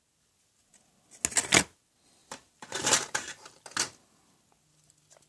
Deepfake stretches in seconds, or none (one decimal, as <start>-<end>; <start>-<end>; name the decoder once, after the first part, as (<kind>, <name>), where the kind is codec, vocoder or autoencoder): 2.2-3.6 (vocoder, BigVGAN v2)